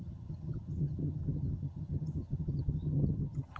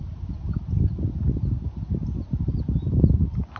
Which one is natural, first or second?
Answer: second